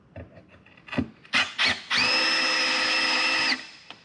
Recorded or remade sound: recorded